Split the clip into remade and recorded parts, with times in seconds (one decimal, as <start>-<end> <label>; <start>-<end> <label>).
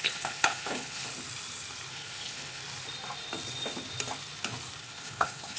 0.0-1.1 remade; 1.1-1.9 recorded; 1.9-2.6 remade; 2.6-4.8 recorded; 4.8-5.6 remade